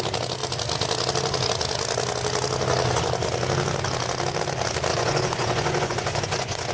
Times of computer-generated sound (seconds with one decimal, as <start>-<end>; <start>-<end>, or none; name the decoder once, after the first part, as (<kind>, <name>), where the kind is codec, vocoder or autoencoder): 4.9-6.7 (vocoder, Vocos)

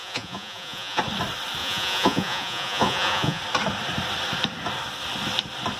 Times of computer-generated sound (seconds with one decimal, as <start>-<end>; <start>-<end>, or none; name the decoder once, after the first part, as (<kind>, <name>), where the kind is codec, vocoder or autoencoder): 0.0-1.0 (vocoder, Vocos); 1.6-3.4

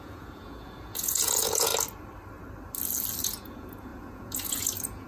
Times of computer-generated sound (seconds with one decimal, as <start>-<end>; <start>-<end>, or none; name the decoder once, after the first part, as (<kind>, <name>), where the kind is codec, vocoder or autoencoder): 0.0-1.7 (vocoder, Vocos); 3.2-5.1

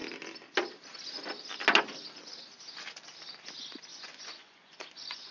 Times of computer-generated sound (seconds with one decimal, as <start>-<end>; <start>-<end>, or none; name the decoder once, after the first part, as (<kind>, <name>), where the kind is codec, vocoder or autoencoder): 3.9-5.3 (vocoder, Vocos)

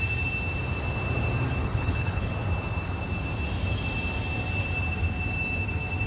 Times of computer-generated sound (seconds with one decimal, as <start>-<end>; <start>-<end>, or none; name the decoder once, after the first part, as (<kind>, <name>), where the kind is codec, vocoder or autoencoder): 1.6-2.3 (codec, HILCodec)

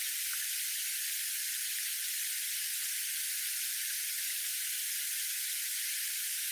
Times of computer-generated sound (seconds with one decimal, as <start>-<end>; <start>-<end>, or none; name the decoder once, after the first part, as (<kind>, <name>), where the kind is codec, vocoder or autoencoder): none